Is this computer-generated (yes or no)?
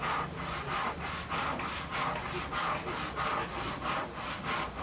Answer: no